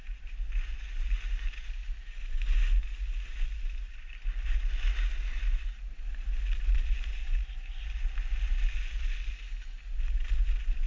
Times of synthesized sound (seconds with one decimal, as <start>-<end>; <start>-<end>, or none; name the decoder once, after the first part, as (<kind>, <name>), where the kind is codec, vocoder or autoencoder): none